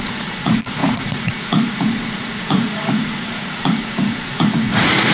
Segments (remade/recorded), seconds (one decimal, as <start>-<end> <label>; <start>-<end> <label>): 0.0-5.1 remade